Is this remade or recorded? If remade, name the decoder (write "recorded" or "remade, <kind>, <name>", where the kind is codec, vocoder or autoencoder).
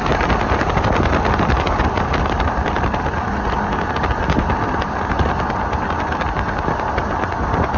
recorded